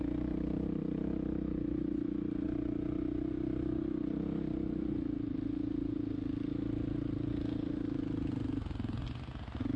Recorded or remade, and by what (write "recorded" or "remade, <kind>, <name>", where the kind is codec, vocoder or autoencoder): recorded